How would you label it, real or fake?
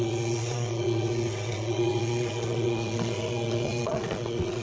fake